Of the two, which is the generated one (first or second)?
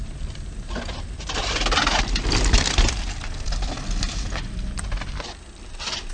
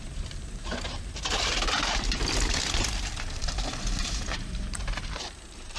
second